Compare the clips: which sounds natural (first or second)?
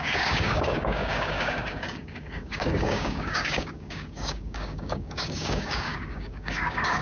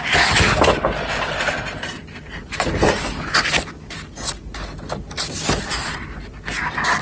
second